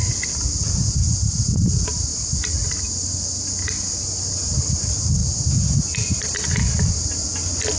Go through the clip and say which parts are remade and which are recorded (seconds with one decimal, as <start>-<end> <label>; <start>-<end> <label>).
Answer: 0.0-5.2 recorded; 5.2-6.9 remade; 6.9-7.8 recorded